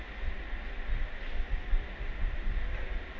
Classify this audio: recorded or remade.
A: recorded